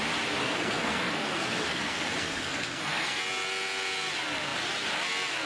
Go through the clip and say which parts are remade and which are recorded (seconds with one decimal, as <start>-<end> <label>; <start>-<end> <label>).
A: 0.0-0.4 recorded; 0.4-3.2 remade; 3.2-5.5 recorded